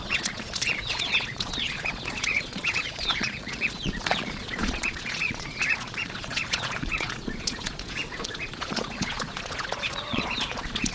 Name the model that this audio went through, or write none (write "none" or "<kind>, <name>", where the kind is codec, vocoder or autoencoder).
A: vocoder, Vocos